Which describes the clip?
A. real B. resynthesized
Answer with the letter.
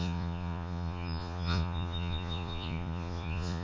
B